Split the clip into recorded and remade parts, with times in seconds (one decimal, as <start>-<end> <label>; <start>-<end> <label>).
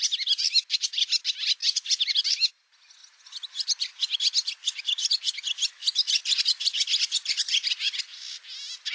0.0-1.6 recorded; 1.6-2.2 remade; 2.2-8.9 recorded